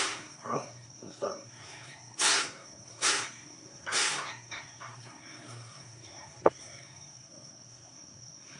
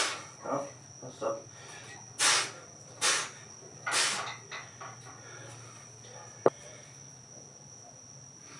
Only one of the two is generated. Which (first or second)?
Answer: first